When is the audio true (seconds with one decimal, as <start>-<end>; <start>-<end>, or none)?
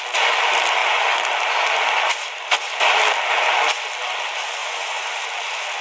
0.0-4.6; 5.2-5.8